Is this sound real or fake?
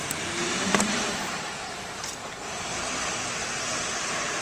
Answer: fake